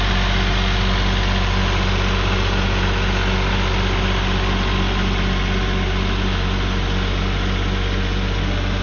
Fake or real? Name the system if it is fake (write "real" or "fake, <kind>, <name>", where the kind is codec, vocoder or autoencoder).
real